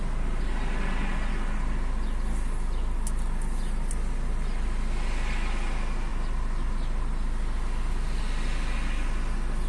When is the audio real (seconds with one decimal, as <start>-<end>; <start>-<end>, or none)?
0.0-9.7

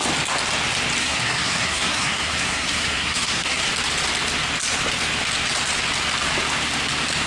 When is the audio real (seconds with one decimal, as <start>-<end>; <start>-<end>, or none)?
0.0-1.0; 3.7-7.3

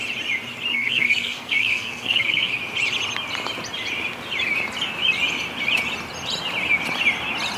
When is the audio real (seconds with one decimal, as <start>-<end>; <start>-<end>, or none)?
0.0-0.7; 2.5-7.6

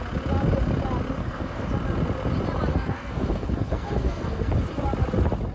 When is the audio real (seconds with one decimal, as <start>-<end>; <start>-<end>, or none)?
0.0-1.2; 1.7-2.7; 4.5-5.5

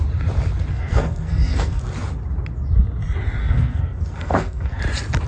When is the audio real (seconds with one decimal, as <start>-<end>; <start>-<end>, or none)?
0.0-0.7; 1.8-3.4; 4.8-5.3